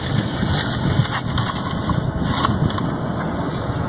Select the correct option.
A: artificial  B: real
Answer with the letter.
B